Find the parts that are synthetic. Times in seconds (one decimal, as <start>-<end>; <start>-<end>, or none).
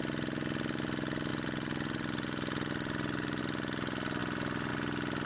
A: 1.3-3.4; 4.2-4.7